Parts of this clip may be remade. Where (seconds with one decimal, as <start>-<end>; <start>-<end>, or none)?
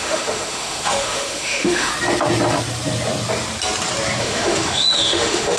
0.0-1.9; 4.2-5.6